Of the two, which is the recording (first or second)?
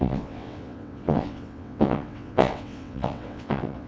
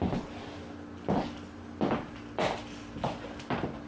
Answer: second